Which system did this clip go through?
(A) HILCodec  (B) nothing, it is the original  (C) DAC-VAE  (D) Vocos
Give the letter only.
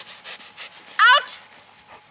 B